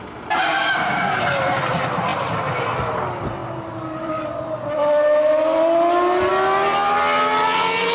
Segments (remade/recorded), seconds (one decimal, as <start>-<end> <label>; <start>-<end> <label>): 0.0-0.5 recorded; 0.5-1.2 remade; 1.2-7.9 recorded